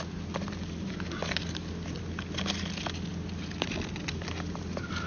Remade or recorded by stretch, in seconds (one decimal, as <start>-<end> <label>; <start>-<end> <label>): 0.0-5.1 recorded